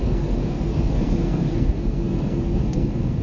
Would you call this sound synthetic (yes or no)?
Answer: yes